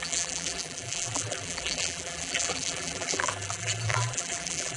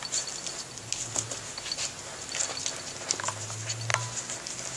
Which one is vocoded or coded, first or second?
first